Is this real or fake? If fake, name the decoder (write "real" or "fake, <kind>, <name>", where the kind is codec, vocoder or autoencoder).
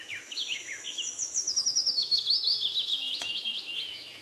fake, autoencoder, DAC-VAE